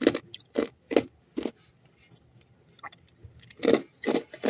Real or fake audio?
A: real